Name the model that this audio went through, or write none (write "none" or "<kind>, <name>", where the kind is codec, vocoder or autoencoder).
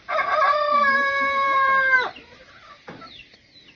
vocoder, BigVGAN v2